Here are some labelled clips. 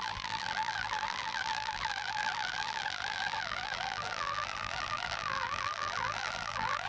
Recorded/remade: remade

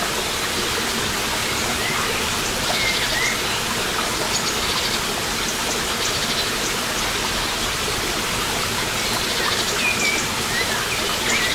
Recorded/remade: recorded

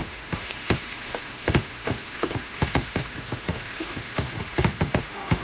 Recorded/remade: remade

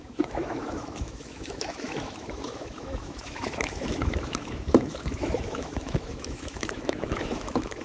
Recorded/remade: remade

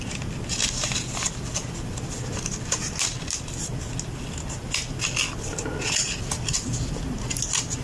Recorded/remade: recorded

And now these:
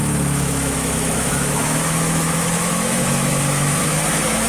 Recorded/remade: remade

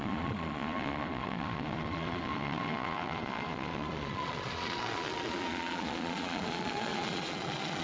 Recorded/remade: remade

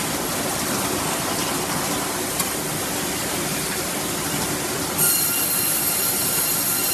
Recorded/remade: recorded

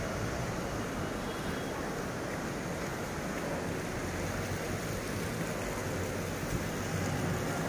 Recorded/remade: recorded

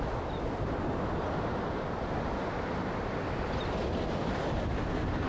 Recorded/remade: recorded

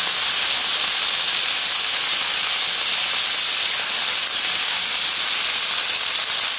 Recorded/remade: recorded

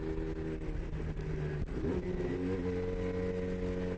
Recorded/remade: recorded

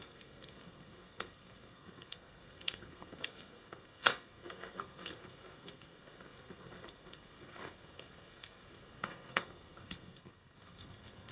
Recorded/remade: remade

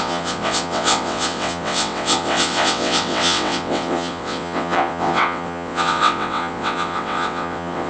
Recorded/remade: remade